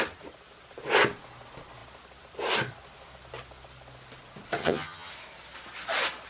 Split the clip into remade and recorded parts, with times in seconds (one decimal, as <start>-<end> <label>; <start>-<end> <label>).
0.0-4.6 recorded; 4.6-5.1 remade; 5.1-6.3 recorded